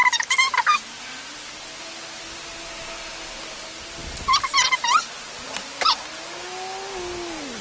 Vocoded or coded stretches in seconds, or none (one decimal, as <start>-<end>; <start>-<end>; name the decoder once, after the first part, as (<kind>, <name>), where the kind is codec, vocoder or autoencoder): none